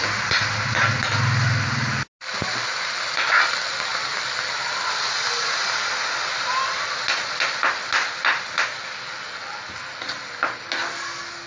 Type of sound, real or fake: real